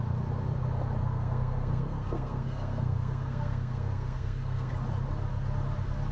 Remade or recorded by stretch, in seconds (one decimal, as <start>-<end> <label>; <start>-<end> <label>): 0.0-1.0 recorded; 1.0-4.7 remade; 4.7-6.1 recorded